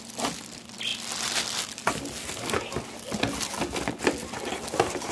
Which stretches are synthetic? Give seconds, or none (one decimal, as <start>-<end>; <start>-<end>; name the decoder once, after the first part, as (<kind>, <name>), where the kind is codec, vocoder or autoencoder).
none